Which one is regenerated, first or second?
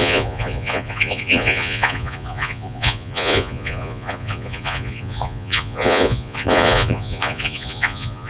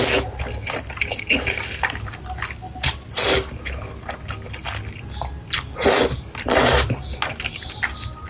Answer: first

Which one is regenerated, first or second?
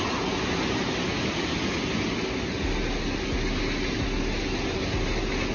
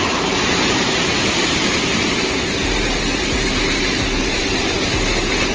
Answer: second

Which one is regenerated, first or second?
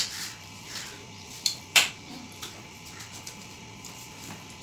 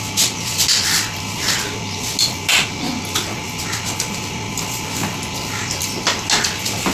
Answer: first